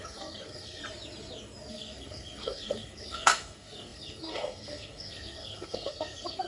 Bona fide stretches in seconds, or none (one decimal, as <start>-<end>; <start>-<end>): 0.8-1.7